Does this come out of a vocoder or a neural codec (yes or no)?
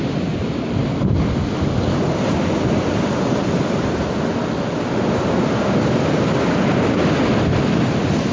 no